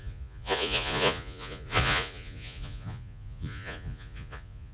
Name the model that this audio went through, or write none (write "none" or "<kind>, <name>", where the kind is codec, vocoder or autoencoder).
vocoder, Vocos